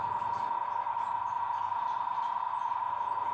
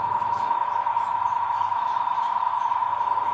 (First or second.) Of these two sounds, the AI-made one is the second